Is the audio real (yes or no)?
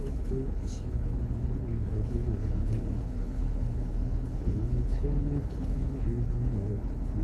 no